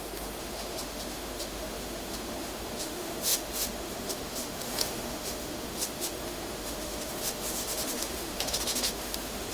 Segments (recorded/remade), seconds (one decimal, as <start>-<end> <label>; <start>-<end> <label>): 0.0-9.5 remade

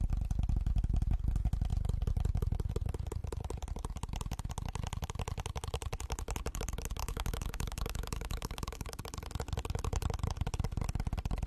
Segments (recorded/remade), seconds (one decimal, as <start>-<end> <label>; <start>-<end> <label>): 0.0-7.0 recorded; 7.0-9.0 remade; 9.0-11.5 recorded

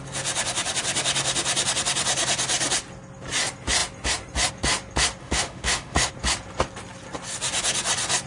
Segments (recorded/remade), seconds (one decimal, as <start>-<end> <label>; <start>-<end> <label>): 0.0-5.2 recorded; 5.2-6.1 remade; 6.1-8.3 recorded